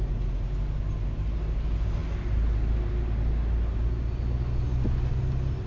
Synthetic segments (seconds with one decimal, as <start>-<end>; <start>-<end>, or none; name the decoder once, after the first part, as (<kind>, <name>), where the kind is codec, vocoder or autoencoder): none